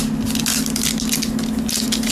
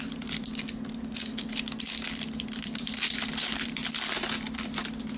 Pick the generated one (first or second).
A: second